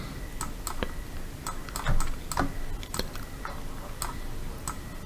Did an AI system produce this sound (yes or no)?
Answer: no